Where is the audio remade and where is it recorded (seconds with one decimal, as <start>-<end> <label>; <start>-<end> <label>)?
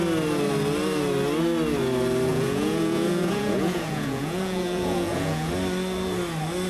0.0-2.3 recorded; 2.3-5.5 remade; 5.5-6.7 recorded